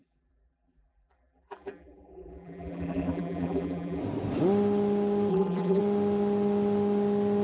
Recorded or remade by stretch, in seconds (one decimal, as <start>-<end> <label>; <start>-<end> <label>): 0.0-4.0 remade; 4.0-5.3 recorded; 5.3-5.8 remade; 5.8-7.4 recorded